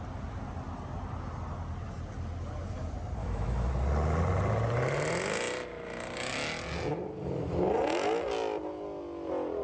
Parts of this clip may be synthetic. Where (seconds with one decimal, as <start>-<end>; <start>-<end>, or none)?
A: 3.2-3.7